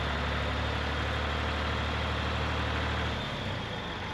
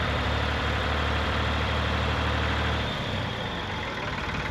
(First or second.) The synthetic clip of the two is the second